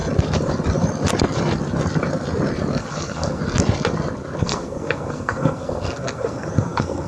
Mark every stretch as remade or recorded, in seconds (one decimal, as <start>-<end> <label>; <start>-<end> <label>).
0.0-2.8 recorded; 2.8-3.4 remade; 3.4-4.4 recorded; 4.4-7.1 remade